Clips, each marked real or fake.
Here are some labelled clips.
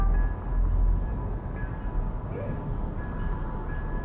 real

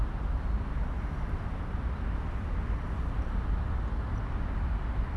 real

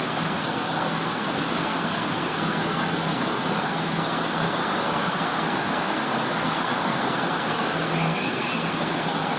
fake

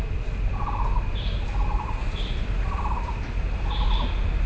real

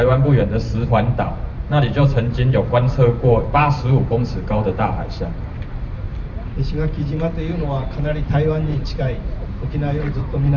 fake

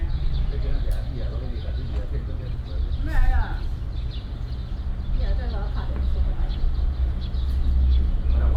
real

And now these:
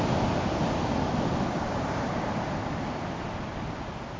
real